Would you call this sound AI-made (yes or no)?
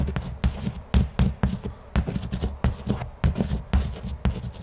no